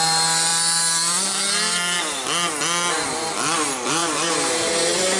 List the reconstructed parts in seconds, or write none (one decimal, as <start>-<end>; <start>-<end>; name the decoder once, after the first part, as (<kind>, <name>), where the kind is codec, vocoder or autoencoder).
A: 4.0-5.2 (vocoder, BigVGAN v2)